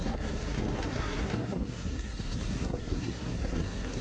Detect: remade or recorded remade